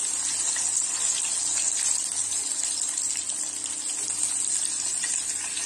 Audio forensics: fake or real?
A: real